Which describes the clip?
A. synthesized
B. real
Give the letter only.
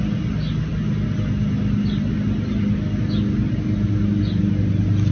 B